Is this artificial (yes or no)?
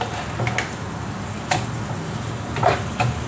no